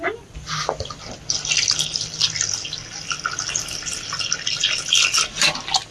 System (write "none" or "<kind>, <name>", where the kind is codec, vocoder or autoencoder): none